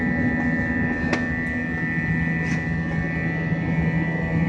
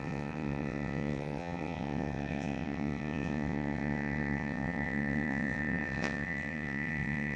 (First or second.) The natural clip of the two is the first